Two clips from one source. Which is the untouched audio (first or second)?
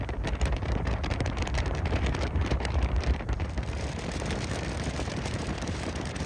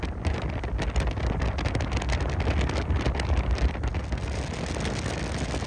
second